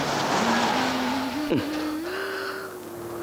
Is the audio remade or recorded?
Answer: recorded